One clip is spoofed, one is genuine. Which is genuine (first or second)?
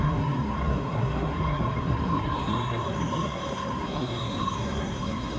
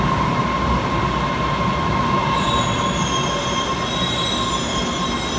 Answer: second